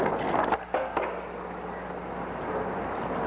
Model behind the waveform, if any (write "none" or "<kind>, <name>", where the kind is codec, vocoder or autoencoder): none